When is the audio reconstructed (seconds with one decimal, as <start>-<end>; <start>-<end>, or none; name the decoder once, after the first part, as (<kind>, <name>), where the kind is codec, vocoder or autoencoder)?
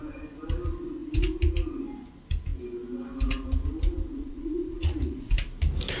4.2-5.3 (vocoder, Vocos)